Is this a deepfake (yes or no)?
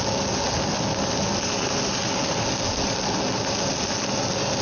no